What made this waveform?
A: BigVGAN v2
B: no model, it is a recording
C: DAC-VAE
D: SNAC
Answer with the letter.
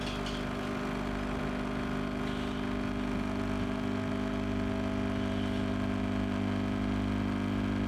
B